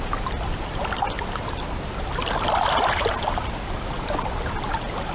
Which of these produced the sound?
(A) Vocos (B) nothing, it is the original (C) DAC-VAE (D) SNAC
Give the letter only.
B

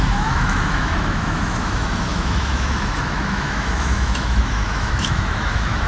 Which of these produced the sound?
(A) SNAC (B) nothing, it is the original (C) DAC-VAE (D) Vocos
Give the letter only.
C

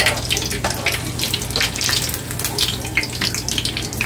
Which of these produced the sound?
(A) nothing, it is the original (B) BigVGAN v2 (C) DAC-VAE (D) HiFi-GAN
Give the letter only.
A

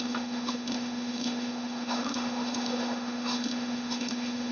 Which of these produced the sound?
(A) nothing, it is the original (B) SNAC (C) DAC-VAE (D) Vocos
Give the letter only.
C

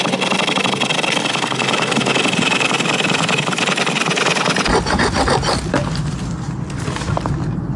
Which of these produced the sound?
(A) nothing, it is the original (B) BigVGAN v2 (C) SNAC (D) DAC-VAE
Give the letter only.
A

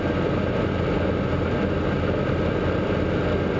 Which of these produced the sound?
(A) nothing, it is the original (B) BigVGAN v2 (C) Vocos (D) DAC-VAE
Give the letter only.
A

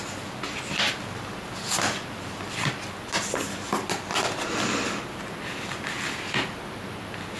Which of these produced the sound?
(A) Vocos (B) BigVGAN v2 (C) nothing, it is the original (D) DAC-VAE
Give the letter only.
C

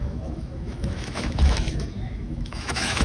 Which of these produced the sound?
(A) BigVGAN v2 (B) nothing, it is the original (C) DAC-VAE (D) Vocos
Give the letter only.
C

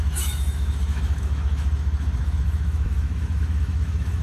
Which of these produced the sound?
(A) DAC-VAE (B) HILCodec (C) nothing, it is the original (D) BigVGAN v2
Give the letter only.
A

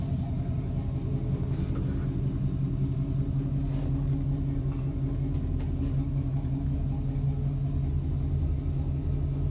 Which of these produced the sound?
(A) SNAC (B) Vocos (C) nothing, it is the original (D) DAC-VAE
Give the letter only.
C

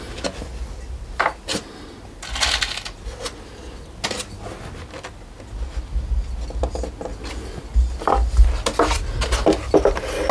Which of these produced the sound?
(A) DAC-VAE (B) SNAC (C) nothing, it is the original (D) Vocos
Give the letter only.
C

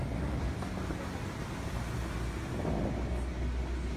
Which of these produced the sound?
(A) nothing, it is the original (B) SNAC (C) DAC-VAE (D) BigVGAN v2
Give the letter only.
A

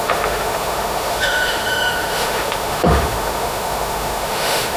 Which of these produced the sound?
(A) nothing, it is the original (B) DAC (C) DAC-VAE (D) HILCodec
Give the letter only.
C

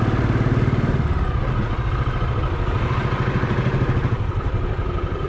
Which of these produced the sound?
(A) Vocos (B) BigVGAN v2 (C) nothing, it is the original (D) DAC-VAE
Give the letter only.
C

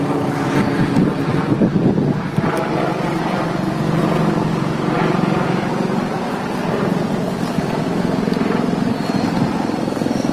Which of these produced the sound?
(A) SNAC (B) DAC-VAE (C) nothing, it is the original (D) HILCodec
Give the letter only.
C